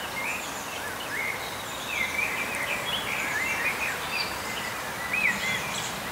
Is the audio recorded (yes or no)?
yes